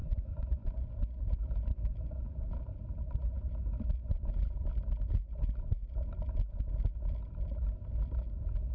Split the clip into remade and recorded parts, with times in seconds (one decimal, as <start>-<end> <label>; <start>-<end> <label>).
0.0-1.0 remade; 1.0-8.7 recorded